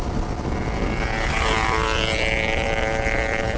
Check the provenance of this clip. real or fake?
real